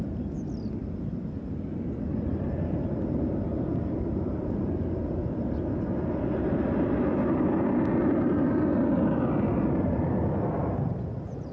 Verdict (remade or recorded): recorded